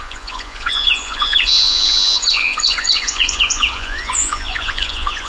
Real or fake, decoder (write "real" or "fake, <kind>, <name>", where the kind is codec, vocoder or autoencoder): fake, vocoder, Vocos